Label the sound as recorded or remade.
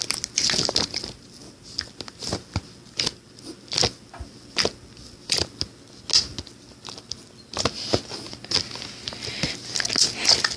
recorded